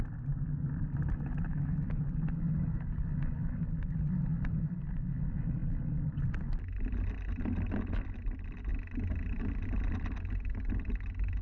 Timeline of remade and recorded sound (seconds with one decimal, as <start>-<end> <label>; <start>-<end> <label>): 0.0-1.5 recorded; 1.5-2.0 remade; 2.0-11.4 recorded